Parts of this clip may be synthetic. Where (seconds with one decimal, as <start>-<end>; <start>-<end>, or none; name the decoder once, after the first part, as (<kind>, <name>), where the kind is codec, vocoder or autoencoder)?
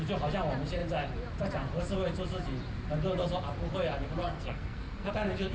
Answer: 4.2-5.1 (codec, SNAC)